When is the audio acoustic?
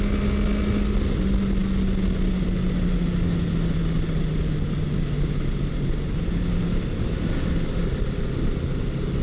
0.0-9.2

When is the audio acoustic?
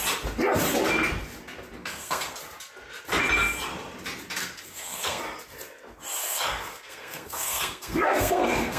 0.0-1.8; 2.4-4.4; 5.2-6.2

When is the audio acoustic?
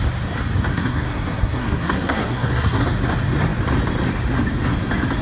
0.0-0.7; 2.8-5.2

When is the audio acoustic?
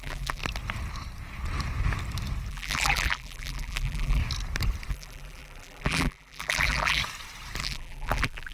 0.4-2.5; 4.2-4.9; 7.0-7.6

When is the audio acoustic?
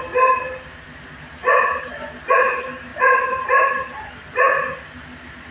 0.0-2.9; 4.1-5.5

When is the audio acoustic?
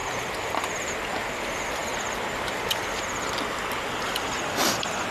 0.9-5.1